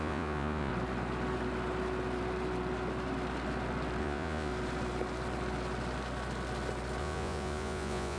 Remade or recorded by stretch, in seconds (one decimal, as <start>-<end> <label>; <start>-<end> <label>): 0.0-0.7 remade; 0.7-4.0 recorded; 4.0-4.5 remade; 4.5-7.0 recorded; 7.0-8.2 remade